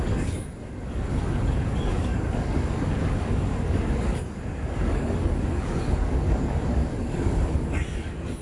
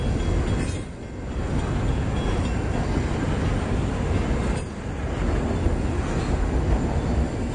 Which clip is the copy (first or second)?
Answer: first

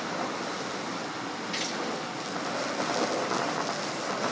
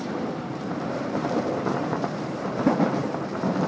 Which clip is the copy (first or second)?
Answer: second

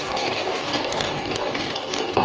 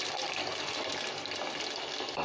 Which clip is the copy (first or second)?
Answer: first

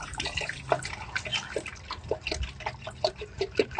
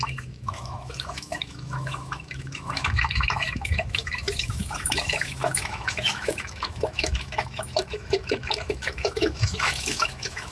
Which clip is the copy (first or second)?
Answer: second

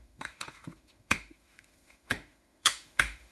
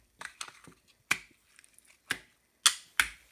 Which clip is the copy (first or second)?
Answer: first